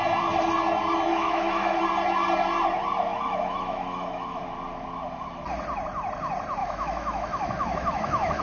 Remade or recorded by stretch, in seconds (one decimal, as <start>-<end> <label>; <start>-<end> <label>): 0.0-1.1 recorded; 1.1-1.8 remade; 1.8-3.1 recorded; 3.1-4.4 remade; 4.4-6.6 recorded; 6.6-8.4 remade